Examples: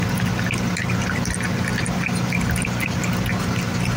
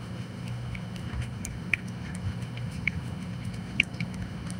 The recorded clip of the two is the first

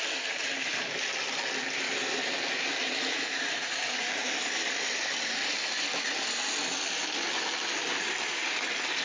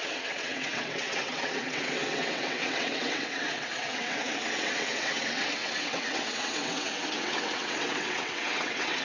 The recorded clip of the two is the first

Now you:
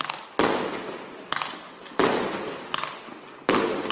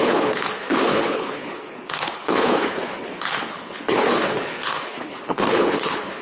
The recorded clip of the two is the first